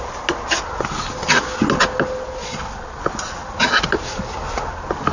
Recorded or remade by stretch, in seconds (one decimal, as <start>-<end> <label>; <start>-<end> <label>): 0.0-2.4 recorded; 2.4-3.0 remade; 3.0-5.1 recorded